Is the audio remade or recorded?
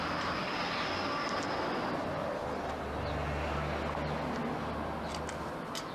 recorded